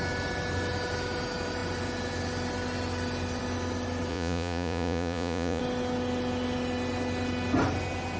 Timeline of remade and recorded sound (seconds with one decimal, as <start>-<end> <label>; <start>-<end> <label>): 0.0-4.1 recorded; 4.1-5.6 remade; 5.6-8.2 recorded

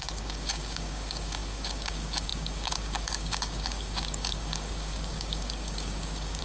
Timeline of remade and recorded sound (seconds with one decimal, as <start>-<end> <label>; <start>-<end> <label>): 0.0-6.4 remade

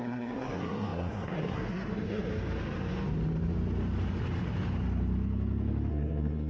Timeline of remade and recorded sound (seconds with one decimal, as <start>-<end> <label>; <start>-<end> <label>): 0.0-2.3 remade; 2.3-5.9 recorded; 5.9-6.5 remade

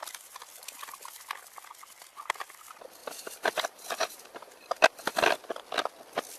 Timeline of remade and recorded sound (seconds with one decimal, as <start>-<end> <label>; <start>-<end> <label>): 0.0-3.0 recorded; 3.0-5.2 remade; 5.2-6.4 recorded

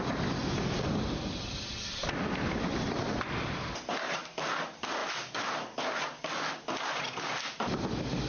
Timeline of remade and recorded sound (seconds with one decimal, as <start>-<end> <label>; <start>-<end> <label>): 0.0-8.3 recorded